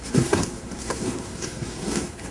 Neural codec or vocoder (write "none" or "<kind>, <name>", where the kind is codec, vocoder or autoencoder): codec, SNAC